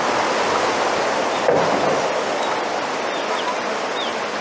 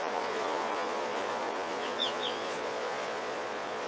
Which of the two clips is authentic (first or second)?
first